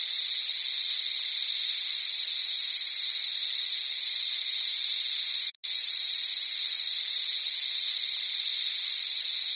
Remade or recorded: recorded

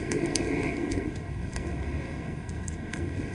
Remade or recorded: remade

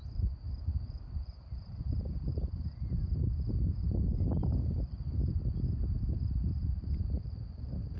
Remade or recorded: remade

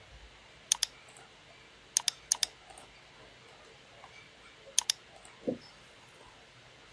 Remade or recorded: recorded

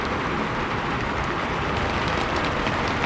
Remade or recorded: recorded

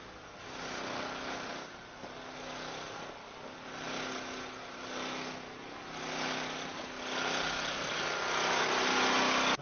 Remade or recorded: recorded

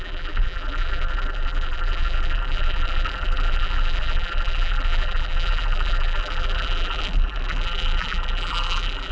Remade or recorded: remade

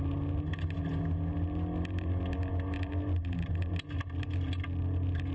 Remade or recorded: recorded